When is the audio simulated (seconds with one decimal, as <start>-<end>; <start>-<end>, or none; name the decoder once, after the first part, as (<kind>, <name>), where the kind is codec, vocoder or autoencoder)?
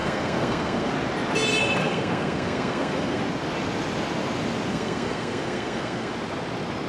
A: 0.0-0.9 (codec, SNAC); 1.8-3.2; 4.7-6.1